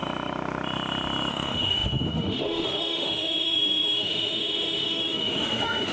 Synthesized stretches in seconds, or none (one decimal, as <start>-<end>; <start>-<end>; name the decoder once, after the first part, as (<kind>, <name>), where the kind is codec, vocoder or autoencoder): 1.3-5.9 (autoencoder, DAC-VAE)